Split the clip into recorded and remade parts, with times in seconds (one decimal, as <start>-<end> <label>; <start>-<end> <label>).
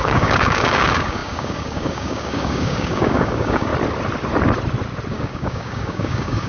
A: 0.0-3.7 remade; 3.7-5.1 recorded; 5.1-6.5 remade